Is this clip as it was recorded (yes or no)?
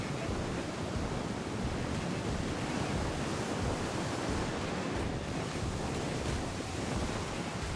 yes